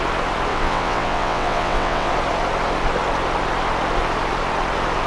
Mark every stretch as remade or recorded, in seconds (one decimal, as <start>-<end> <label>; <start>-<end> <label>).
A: 0.0-0.5 recorded; 0.5-2.1 remade; 2.1-5.1 recorded